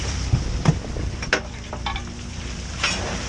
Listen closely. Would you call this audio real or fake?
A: fake